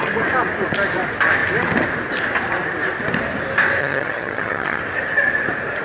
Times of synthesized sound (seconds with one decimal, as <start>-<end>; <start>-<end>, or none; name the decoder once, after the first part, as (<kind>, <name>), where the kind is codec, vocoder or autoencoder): 3.8-4.8 (vocoder, HiFi-GAN)